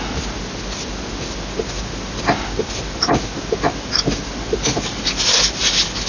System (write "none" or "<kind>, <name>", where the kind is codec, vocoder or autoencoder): none